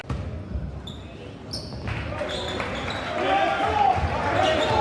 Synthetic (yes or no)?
no